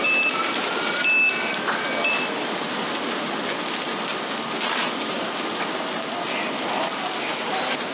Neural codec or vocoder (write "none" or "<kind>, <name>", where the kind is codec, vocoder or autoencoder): none